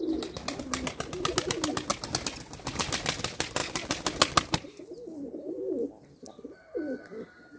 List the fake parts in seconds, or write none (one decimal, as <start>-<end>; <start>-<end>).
none